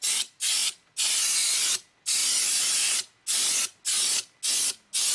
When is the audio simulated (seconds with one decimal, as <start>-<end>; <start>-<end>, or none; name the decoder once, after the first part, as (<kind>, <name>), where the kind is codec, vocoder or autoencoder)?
0.0-0.6 (vocoder, BigVGAN v2); 1.3-2.2